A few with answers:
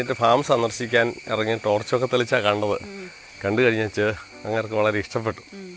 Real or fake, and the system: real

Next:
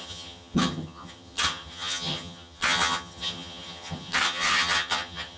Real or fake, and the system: fake, vocoder, HiFi-GAN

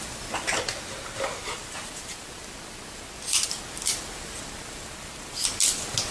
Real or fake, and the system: real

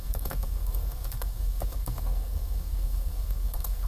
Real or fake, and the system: fake, codec, SNAC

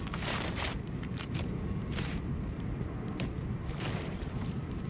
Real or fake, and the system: fake, vocoder, BigVGAN v2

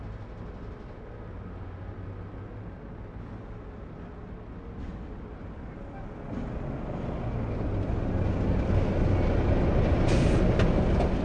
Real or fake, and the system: real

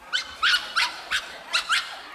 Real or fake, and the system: real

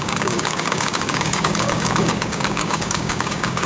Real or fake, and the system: fake, codec, DAC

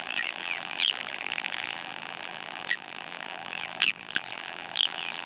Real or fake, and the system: fake, vocoder, BigVGAN v2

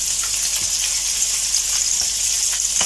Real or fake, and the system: real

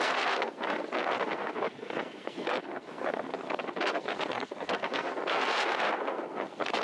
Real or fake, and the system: fake, codec, SNAC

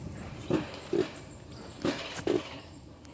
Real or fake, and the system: fake, vocoder, BigVGAN v2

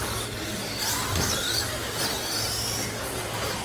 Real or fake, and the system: real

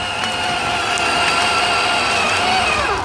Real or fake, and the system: real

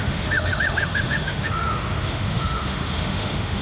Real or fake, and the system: fake, autoencoder, DAC-VAE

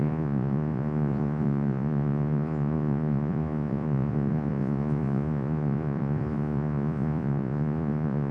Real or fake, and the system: fake, vocoder, Vocos